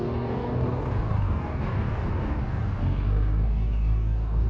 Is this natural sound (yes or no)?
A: no